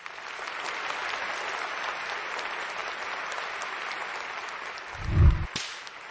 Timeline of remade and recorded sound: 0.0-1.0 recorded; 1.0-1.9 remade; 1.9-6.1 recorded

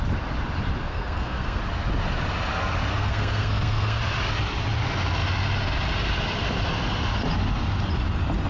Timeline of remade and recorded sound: 0.0-0.9 recorded; 0.9-1.6 remade; 1.6-2.9 recorded; 2.9-4.0 remade; 4.0-8.5 recorded